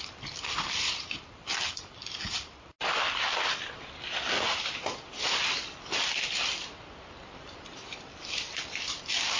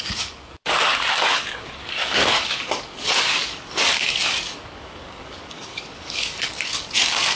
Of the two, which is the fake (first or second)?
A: second